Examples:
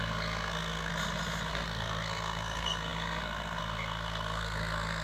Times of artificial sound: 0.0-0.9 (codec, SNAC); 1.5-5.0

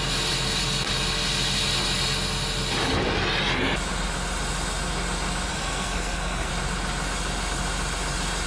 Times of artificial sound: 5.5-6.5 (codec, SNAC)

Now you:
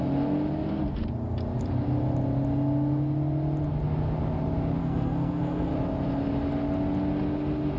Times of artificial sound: 4.8-5.7 (codec, SNAC)

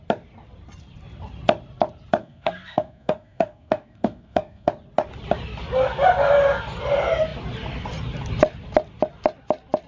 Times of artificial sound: 2.2-4.7 (codec, SNAC)